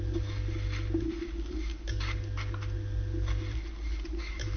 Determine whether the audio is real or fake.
real